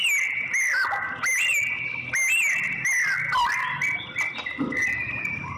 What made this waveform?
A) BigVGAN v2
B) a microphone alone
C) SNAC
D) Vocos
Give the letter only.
B